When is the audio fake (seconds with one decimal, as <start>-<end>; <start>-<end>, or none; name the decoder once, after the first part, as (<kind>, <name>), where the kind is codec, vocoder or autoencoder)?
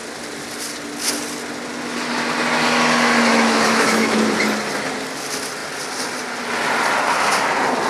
3.3-4.2 (autoencoder, DAC-VAE)